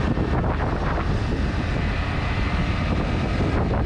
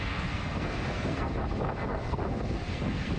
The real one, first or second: first